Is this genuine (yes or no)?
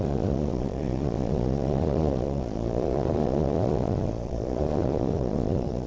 no